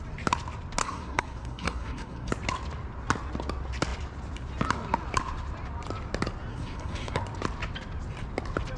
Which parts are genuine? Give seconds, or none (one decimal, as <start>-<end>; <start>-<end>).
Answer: 0.0-0.8; 2.3-6.5; 7.2-8.8